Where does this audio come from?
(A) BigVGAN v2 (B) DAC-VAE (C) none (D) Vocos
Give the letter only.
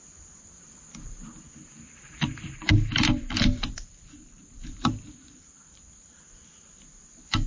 A